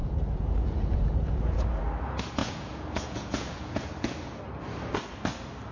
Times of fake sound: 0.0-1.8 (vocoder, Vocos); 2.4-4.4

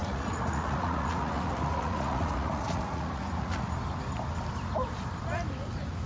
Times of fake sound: 0.0-3.7 (vocoder, Vocos)

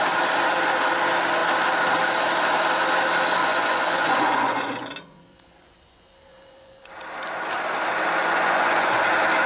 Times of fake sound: 3.4-6.9 (vocoder, Vocos); 8.2-9.0

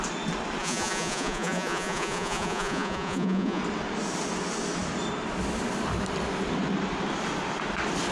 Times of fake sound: 0.6-3.6 (vocoder, Vocos)

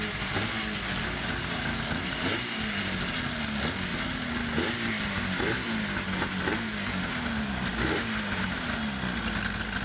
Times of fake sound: none

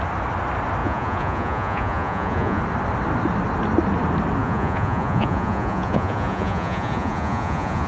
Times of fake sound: 0.8-2.6 (vocoder, Vocos); 4.4-7.9

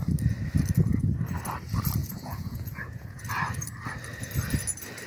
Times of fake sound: 2.0-3.2 (vocoder, Vocos)